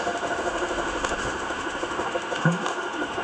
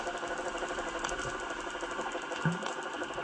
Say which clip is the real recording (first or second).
second